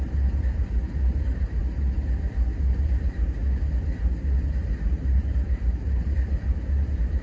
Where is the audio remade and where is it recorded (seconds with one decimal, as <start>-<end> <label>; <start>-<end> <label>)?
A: 0.0-1.6 remade; 1.6-2.6 recorded; 2.6-3.4 remade; 3.4-4.6 recorded; 4.6-7.2 remade